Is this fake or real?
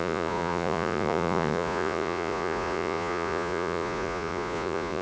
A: fake